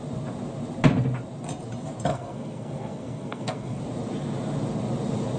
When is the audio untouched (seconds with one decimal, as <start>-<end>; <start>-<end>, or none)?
0.0-2.1; 3.8-5.4